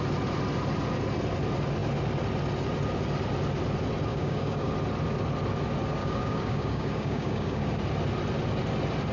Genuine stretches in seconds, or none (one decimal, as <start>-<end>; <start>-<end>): 0.0-4.1; 4.7-6.0; 7.7-9.1